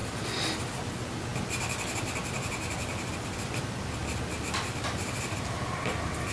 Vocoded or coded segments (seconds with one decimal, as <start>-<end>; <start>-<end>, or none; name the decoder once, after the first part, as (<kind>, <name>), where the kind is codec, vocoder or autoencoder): none